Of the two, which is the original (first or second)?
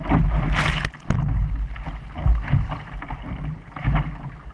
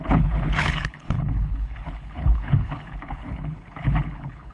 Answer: first